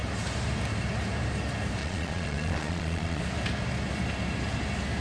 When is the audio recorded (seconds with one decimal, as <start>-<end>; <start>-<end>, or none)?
0.0-1.8; 3.2-5.0

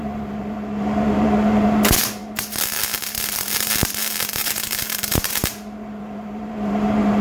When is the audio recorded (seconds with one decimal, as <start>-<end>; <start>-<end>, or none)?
none

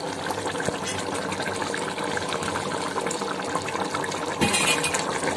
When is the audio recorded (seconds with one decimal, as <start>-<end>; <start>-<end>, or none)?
0.0-5.4

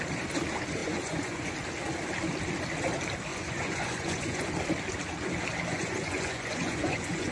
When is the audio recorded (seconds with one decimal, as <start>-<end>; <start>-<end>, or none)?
0.0-0.8; 1.5-3.3; 4.5-5.7

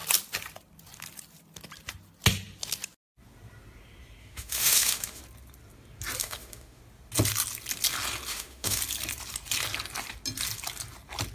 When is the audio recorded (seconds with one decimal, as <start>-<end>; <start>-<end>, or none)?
0.0-4.2; 5.2-6.2; 6.8-8.3; 8.8-11.3

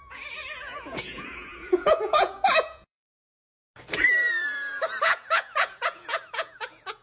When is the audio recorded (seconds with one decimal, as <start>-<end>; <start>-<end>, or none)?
3.4-5.0